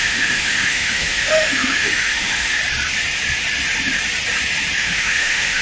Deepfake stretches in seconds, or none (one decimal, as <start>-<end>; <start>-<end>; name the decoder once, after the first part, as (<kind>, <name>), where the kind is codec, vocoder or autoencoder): 0.0-2.6 (autoencoder, DAC-VAE); 4.8-5.6